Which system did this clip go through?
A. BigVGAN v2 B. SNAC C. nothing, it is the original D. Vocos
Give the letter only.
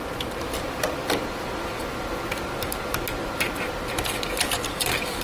C